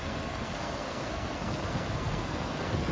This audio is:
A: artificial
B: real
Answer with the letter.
A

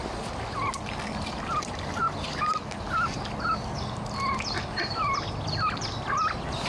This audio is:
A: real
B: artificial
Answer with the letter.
A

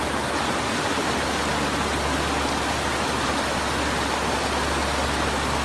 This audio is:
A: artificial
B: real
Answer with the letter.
B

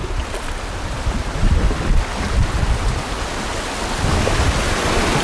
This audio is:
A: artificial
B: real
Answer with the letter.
B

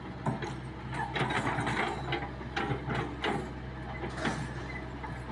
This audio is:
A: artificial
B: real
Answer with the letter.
B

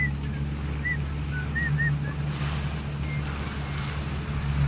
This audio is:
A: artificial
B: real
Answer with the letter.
B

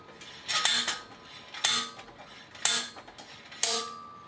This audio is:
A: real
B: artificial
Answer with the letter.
A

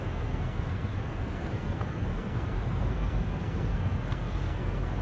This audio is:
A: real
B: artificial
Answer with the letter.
B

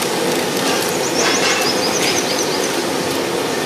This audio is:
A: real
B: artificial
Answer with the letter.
A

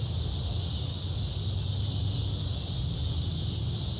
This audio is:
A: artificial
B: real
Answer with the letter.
B